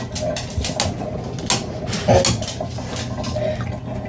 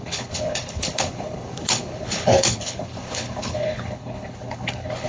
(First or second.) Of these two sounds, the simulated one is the second